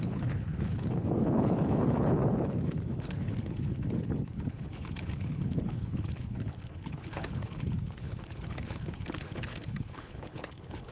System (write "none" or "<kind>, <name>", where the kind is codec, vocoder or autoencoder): codec, HILCodec